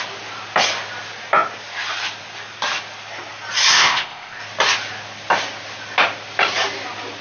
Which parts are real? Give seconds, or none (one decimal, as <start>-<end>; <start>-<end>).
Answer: 0.0-3.7; 4.4-7.2